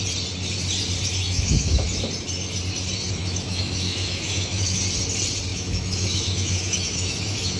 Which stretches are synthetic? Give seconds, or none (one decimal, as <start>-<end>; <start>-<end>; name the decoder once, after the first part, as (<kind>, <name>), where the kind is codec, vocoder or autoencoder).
1.2-2.0 (autoencoder, DAC-VAE); 3.2-4.8; 5.5-7.6